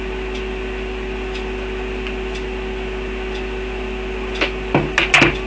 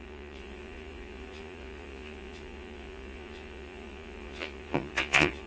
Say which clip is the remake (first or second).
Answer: second